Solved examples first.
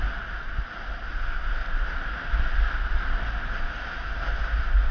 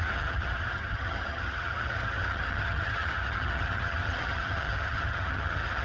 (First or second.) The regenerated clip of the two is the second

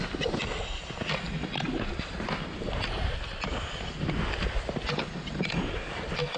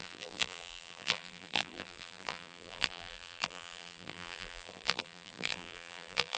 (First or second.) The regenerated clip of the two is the second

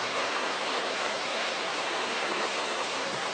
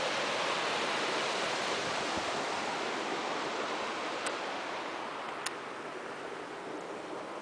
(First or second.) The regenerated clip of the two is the first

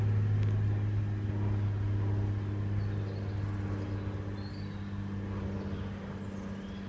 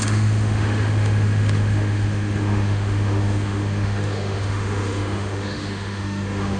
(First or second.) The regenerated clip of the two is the second